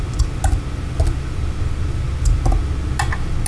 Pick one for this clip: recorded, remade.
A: recorded